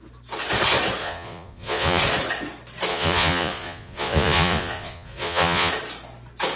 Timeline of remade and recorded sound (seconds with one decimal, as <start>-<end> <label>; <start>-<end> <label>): 0.0-1.0 recorded; 1.0-2.0 remade; 2.0-2.9 recorded; 2.9-5.7 remade; 5.7-6.6 recorded